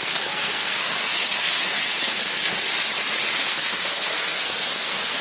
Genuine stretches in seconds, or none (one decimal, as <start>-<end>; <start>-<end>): 2.7-3.4